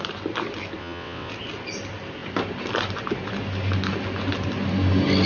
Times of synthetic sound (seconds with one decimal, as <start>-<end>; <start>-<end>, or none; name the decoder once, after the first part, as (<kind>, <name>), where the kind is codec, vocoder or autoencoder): 0.8-1.3 (vocoder, WaveNeXt)